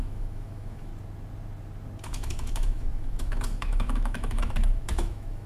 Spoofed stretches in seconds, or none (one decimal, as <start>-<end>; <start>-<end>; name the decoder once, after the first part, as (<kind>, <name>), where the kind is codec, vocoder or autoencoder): 0.0-0.9 (autoencoder, DAC-VAE); 2.0-5.5